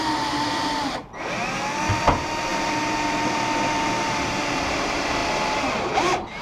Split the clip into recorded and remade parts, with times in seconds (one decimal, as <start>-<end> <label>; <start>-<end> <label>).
0.0-1.0 remade; 1.0-1.8 recorded; 1.8-6.4 remade